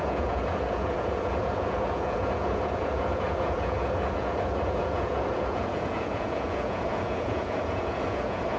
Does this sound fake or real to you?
fake